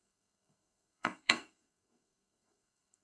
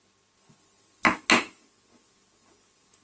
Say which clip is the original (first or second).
second